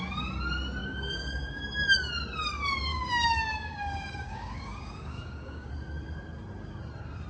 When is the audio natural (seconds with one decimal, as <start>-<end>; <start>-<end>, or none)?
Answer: 0.0-0.8; 1.6-2.9; 5.7-7.3